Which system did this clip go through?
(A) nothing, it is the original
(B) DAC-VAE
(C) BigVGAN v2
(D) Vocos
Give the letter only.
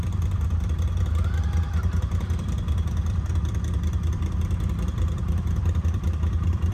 C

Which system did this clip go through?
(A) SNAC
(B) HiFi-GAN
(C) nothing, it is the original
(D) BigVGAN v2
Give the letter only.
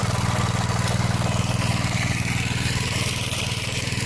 C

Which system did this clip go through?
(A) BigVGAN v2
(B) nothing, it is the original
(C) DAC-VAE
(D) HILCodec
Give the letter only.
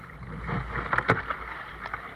B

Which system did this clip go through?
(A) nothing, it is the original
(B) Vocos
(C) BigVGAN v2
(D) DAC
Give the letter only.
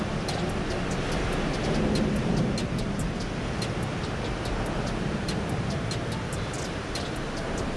A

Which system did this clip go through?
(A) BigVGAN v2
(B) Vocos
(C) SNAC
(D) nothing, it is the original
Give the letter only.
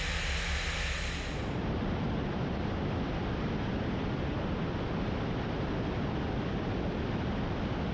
D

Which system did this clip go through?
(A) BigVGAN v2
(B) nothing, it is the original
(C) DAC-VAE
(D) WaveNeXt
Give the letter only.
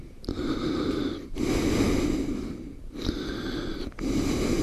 B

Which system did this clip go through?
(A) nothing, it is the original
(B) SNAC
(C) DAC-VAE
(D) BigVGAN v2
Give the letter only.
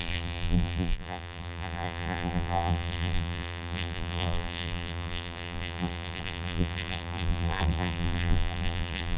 D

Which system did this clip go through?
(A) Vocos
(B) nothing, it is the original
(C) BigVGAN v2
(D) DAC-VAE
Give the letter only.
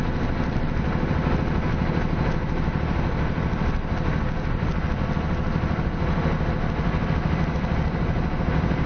B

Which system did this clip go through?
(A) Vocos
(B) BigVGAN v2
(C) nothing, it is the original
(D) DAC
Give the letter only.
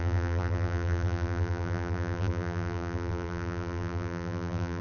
B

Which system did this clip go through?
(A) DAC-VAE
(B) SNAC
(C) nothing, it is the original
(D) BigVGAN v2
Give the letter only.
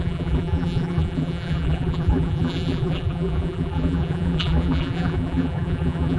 D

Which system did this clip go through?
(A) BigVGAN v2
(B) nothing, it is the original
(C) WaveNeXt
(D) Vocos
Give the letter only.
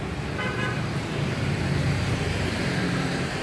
A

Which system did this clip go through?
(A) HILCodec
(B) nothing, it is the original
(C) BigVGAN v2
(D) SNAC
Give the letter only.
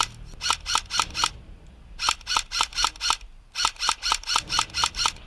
B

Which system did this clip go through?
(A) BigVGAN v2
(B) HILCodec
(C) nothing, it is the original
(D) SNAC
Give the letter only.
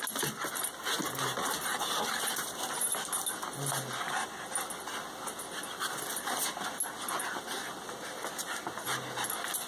C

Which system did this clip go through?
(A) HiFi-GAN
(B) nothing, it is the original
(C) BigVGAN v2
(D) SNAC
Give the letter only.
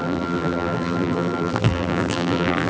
C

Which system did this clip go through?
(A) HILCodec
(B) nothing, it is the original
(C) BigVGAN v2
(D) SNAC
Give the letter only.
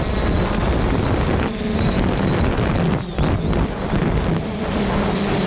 B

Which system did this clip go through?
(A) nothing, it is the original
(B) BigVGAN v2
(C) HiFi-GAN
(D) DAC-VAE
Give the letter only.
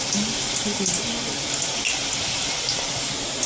A